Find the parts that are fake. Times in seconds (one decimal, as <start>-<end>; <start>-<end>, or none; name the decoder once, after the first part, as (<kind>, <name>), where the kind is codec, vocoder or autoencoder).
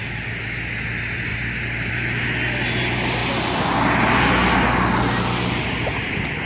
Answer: none